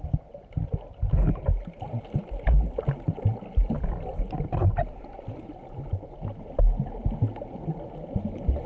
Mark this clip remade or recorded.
recorded